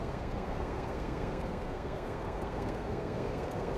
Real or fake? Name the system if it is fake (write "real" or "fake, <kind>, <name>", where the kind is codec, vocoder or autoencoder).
fake, codec, SNAC